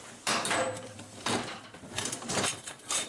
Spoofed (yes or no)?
yes